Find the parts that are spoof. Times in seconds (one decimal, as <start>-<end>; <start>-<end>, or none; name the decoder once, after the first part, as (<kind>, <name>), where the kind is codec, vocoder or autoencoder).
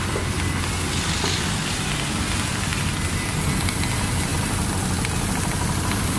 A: none